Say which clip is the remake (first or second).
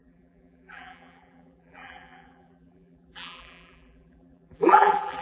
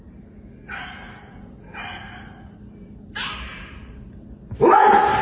first